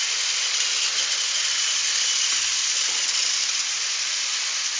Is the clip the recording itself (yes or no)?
yes